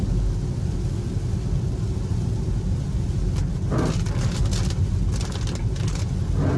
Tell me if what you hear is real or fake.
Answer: real